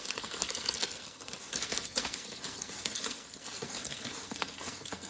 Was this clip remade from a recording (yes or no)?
yes